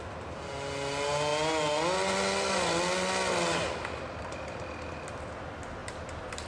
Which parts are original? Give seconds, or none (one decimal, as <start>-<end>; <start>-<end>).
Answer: 0.0-5.8